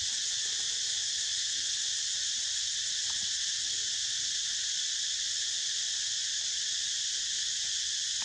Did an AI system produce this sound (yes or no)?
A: no